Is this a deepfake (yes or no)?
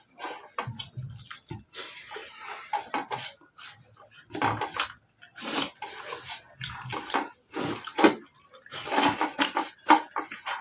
no